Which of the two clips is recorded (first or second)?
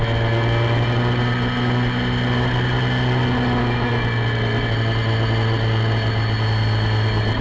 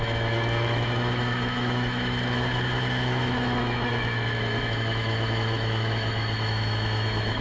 first